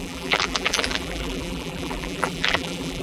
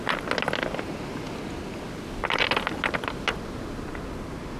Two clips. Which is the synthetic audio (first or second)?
first